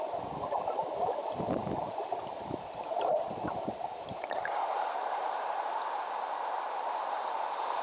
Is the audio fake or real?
fake